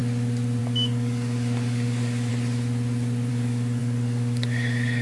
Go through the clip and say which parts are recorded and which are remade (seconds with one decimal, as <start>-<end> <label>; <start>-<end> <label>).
0.0-0.6 recorded; 0.6-2.3 remade; 2.3-3.3 recorded; 3.3-5.0 remade